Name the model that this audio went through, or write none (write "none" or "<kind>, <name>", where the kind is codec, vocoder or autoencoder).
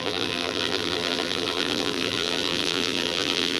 vocoder, BigVGAN v2